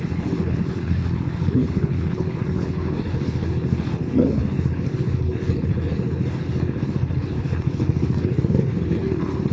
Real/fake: fake